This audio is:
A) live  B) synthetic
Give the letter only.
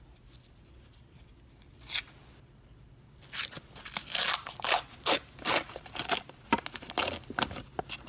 A